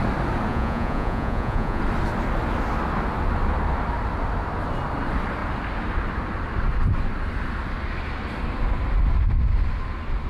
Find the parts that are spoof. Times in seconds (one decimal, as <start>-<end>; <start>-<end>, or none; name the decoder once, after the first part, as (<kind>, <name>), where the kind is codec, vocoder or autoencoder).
0.5-1.8 (vocoder, Vocos)